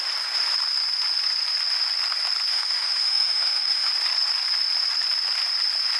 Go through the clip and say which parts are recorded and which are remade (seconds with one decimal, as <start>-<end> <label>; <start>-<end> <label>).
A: 0.0-2.5 recorded; 2.5-3.9 remade; 3.9-6.0 recorded